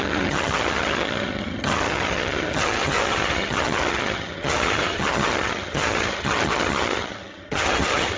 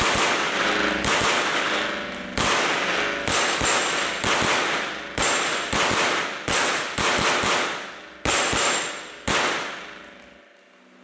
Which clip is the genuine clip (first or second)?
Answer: second